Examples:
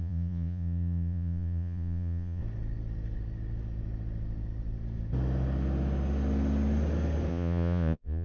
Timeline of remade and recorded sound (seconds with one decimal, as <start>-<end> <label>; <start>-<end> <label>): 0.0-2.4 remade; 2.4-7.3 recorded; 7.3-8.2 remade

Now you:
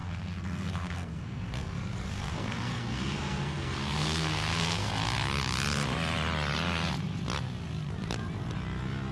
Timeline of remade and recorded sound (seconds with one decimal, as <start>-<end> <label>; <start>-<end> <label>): 0.0-4.9 remade; 4.9-9.1 recorded

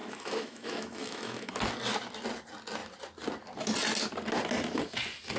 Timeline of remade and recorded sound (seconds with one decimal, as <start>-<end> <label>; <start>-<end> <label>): 0.0-1.5 remade; 1.5-5.4 recorded

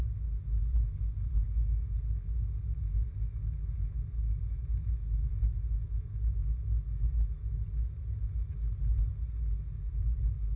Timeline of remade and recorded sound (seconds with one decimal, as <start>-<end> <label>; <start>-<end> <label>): 0.0-10.6 recorded

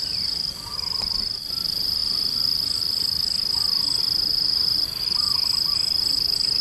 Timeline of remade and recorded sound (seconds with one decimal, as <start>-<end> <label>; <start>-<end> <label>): 0.0-2.0 remade; 2.0-4.0 recorded; 4.0-6.6 remade